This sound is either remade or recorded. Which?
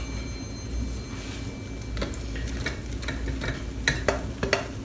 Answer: recorded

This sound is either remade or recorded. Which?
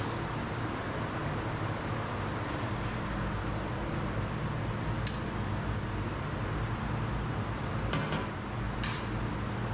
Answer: recorded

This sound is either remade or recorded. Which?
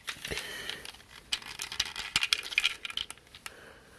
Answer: recorded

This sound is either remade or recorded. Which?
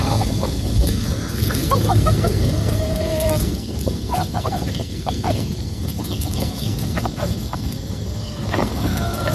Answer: remade